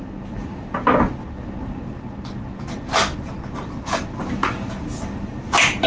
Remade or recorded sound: recorded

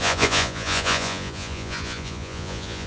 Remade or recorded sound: remade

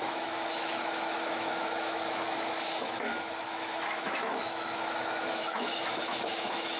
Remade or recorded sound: remade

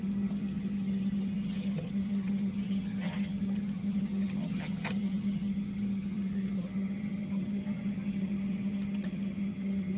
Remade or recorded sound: remade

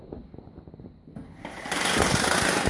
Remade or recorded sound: recorded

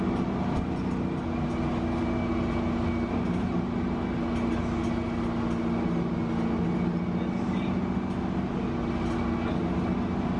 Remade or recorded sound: recorded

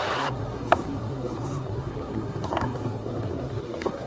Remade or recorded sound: remade